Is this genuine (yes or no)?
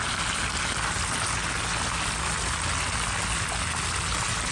yes